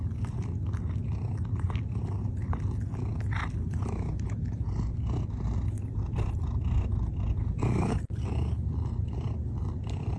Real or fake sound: real